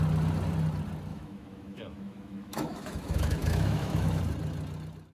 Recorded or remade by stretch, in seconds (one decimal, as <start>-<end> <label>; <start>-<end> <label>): 0.0-1.1 recorded; 1.1-4.2 remade; 4.2-5.1 recorded